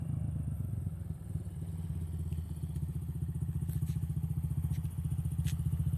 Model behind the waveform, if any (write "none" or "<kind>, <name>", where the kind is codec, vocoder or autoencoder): none